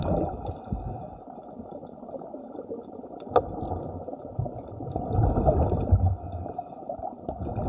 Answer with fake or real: real